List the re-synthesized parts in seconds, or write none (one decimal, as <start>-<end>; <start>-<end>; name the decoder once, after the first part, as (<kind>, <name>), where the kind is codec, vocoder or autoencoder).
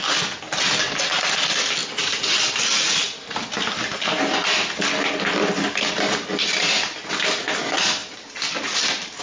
none